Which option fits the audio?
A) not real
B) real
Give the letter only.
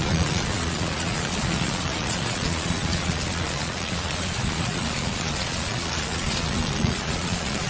A